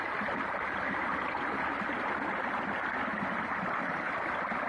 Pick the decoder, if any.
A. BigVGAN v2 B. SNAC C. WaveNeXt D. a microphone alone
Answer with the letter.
D